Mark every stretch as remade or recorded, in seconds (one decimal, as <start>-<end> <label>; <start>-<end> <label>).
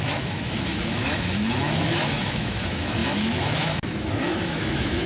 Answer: 0.0-5.1 remade